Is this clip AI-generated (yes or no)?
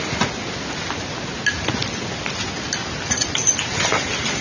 no